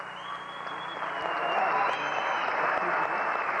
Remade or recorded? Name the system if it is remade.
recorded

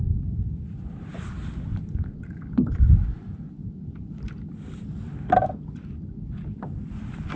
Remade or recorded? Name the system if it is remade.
recorded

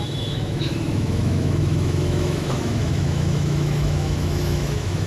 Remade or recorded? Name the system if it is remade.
remade, autoencoder, DAC-VAE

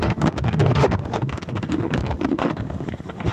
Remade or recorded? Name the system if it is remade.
remade, autoencoder, DAC-VAE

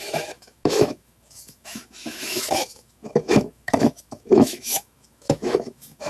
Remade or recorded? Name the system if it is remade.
remade, autoencoder, DAC-VAE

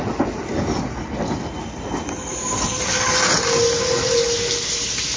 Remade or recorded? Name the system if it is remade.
recorded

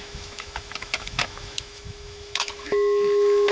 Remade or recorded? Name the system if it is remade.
remade, autoencoder, DAC-VAE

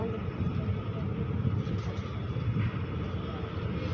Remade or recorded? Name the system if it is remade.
recorded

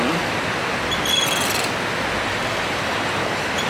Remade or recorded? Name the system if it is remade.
recorded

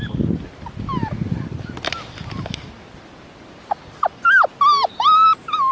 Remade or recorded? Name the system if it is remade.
recorded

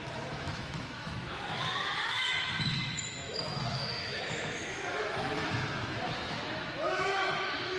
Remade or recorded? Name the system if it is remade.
remade, autoencoder, DAC-VAE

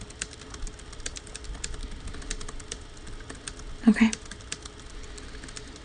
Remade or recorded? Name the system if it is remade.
recorded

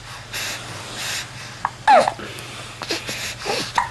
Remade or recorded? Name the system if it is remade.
recorded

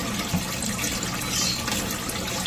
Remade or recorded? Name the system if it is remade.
recorded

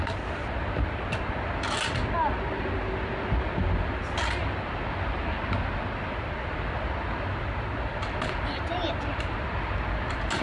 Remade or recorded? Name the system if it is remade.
recorded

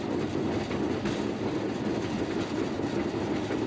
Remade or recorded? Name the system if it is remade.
recorded